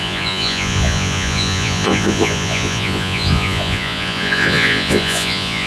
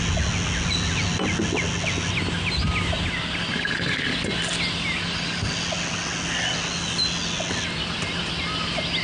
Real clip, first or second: second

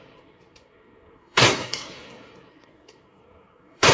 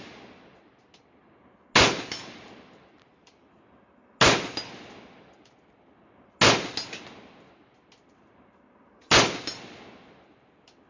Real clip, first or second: second